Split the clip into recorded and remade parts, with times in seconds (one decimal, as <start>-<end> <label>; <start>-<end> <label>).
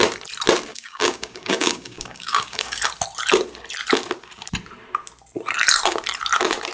0.0-0.7 recorded; 0.7-2.8 remade; 2.8-6.7 recorded